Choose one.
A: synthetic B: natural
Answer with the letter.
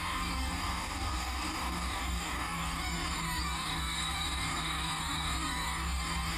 A